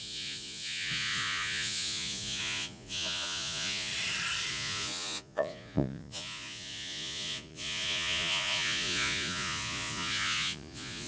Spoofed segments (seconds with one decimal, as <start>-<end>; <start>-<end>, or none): 0.0-3.9; 4.5-11.1